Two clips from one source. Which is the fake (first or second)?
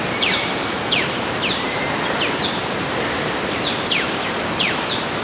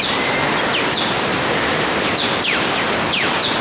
first